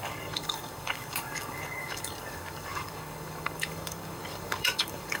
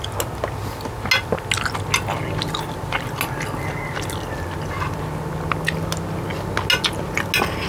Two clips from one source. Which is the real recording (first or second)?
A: second